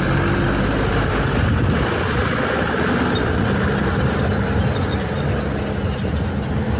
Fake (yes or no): no